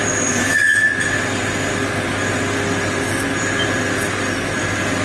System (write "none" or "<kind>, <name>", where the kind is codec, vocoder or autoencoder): none